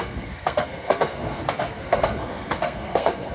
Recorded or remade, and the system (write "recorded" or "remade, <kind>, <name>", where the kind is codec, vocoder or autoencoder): remade, codec, SNAC